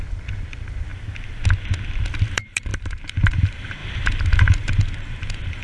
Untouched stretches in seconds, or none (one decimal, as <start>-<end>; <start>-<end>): 0.9-2.2; 3.8-4.4